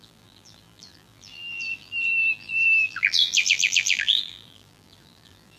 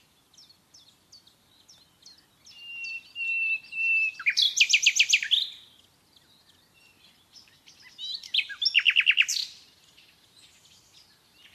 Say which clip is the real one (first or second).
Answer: second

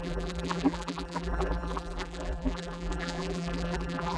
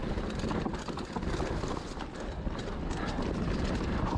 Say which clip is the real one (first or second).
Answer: second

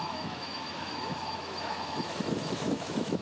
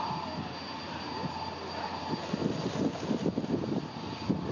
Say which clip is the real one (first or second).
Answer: second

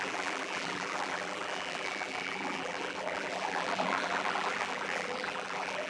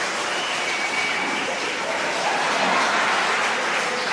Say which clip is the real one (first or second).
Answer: second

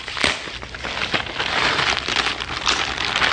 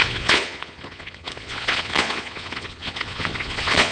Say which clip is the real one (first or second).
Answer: first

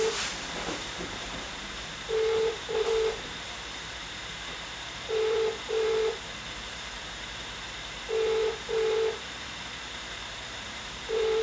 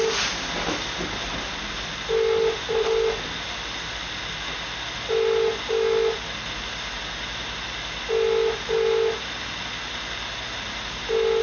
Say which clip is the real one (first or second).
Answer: second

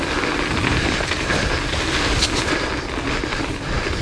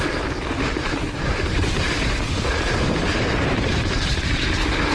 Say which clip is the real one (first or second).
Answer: first